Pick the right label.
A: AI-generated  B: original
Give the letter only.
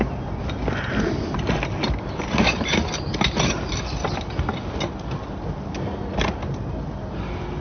B